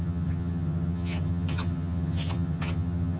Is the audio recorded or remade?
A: remade